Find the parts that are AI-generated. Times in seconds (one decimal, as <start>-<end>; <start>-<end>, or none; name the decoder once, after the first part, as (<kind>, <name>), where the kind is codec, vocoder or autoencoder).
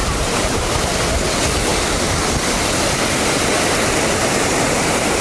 0.0-0.6 (vocoder, BigVGAN v2)